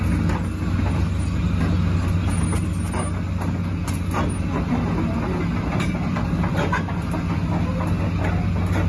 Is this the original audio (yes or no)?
yes